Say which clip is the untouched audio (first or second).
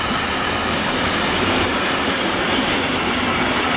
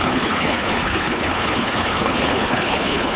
first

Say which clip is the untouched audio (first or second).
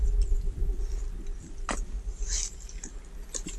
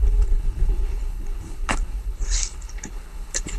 first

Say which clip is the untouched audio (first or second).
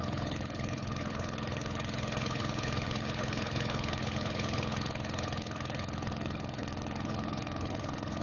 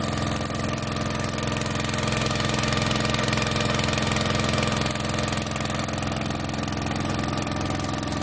second